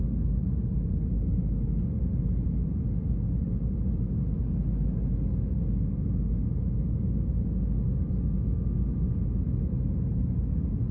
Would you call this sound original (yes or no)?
yes